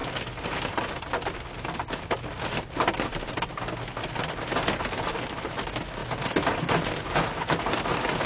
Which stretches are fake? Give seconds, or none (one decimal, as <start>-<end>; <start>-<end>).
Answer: none